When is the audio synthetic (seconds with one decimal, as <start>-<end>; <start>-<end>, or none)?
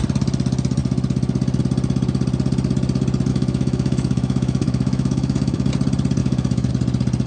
3.3-5.7; 6.2-6.7